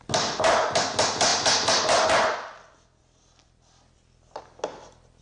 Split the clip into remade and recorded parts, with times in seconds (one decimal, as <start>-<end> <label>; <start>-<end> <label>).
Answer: 0.0-5.2 recorded